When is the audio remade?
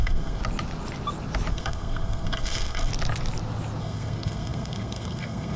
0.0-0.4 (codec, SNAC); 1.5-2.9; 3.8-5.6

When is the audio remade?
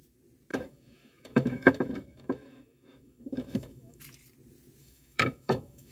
0.5-4.0 (autoencoder, DAC-VAE); 4.8-5.9